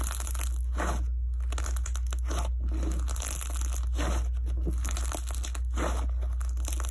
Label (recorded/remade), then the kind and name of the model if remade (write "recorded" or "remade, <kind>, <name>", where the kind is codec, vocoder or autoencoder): recorded